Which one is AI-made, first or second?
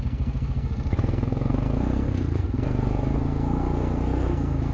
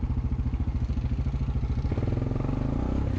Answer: first